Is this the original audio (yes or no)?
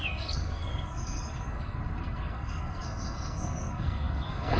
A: no